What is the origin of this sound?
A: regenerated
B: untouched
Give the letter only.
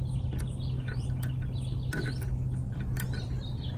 B